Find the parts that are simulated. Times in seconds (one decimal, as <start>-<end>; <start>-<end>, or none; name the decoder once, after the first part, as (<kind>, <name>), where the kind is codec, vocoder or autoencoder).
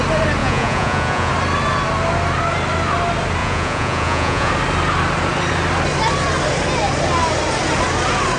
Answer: 0.4-1.3 (vocoder, Vocos); 3.4-4.5